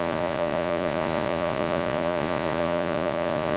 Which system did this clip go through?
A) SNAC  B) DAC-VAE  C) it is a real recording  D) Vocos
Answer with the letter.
D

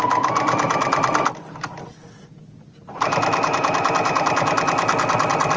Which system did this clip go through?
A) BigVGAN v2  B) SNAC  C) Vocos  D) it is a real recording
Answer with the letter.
D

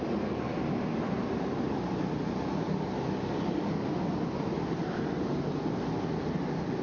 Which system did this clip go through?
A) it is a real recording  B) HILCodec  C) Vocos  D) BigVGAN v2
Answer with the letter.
A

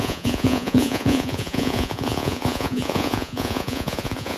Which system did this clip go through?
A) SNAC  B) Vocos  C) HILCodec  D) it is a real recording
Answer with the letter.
B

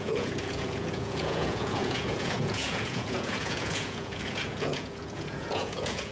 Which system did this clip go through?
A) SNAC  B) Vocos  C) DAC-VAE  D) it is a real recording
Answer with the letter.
B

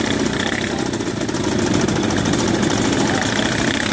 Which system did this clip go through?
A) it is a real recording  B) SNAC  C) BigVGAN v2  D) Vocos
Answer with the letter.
A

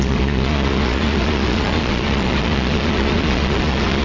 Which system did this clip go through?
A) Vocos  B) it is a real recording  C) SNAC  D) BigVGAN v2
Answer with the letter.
A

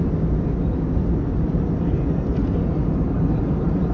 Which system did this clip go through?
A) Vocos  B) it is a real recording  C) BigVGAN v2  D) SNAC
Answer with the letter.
B